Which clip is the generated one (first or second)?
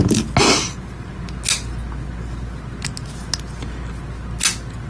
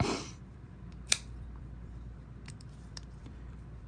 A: second